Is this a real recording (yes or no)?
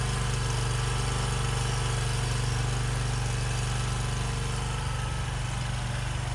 yes